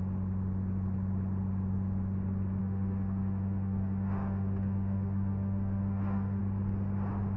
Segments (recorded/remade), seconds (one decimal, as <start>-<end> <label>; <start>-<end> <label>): 0.0-2.6 recorded; 2.6-6.4 remade; 6.4-7.4 recorded